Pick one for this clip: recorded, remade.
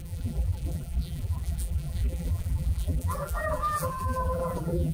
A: remade